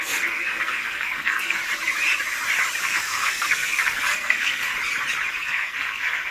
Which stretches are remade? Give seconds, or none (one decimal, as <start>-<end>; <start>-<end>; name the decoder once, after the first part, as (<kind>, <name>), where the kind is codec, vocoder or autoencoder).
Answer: 0.0-1.6 (codec, SNAC); 2.8-4.7; 5.3-6.3